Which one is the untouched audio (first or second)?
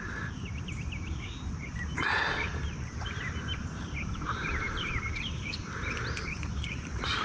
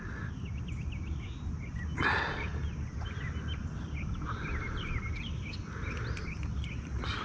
second